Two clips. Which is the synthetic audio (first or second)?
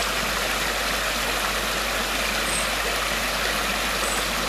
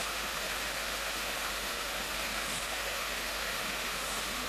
second